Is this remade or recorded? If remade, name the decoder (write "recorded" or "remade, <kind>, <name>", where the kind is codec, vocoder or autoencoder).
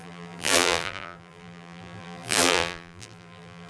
remade, vocoder, BigVGAN v2